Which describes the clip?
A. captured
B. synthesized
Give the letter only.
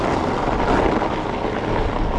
A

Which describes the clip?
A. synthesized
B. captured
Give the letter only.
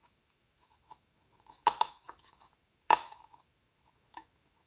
A